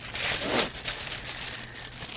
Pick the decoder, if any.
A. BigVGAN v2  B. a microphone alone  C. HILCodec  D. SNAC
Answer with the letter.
B